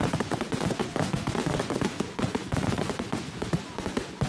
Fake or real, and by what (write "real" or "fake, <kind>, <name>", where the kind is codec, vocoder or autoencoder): fake, vocoder, Vocos